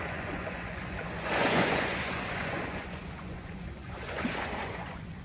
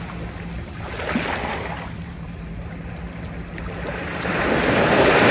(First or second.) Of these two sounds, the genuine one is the second